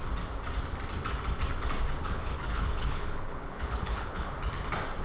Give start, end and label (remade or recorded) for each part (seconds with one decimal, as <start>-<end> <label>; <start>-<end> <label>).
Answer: 0.0-2.0 recorded; 2.0-4.3 remade; 4.3-5.0 recorded